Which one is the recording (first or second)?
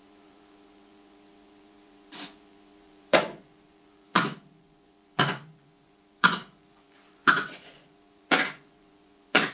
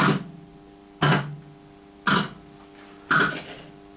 second